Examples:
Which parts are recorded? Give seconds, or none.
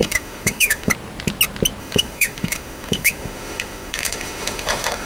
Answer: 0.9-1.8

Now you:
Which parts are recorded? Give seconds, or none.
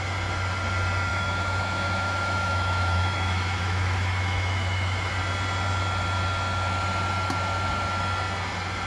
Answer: 0.0-1.1; 5.1-8.9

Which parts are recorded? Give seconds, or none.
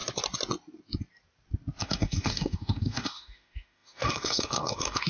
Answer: 0.0-1.8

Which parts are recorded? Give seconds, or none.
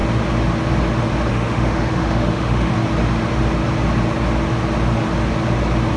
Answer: 0.0-1.3; 2.7-6.0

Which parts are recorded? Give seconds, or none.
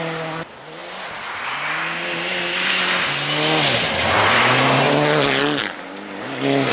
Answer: 0.0-6.7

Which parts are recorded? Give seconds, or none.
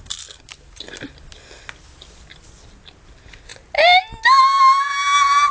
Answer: 0.0-5.5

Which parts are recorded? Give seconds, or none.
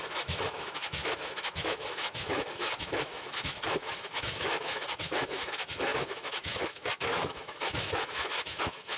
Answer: none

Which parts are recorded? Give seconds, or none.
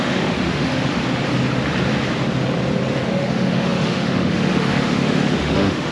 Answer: 1.0-3.0